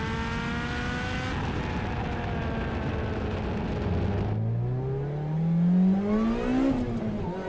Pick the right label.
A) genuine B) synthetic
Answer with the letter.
A